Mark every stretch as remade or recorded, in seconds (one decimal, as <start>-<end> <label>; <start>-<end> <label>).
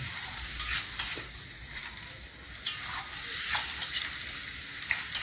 0.0-1.8 remade; 1.8-2.8 recorded; 2.8-4.4 remade; 4.4-5.2 recorded